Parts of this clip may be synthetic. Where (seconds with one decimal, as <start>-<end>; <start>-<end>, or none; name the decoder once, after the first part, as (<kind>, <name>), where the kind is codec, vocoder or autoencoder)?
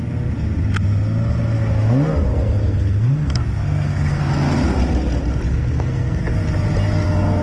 2.3-4.3 (codec, SNAC); 5.5-6.2